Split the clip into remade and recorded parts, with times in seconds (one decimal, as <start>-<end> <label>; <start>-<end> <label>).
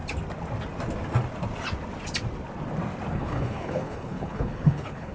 0.0-3.1 recorded; 3.1-5.1 remade